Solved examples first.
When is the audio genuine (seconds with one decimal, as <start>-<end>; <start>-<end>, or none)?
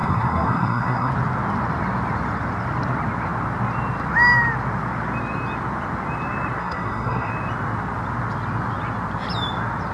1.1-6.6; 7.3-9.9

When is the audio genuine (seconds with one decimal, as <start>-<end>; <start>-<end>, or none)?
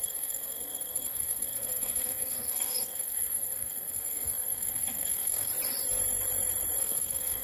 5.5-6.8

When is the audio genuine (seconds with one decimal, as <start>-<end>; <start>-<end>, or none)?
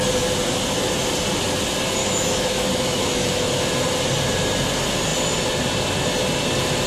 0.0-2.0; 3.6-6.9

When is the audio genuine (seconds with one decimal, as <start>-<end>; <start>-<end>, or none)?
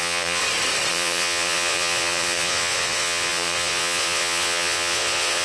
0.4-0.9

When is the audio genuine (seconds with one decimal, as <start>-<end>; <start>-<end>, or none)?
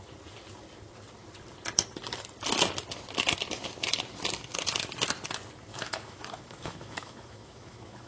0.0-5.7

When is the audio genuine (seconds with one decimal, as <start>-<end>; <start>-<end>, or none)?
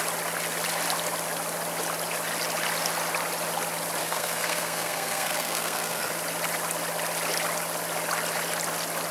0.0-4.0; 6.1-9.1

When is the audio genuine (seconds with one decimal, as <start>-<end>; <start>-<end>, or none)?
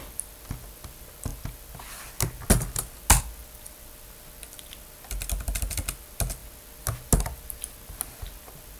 0.0-8.8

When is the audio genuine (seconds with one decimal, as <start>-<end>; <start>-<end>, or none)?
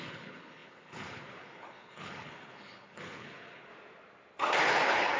3.7-4.6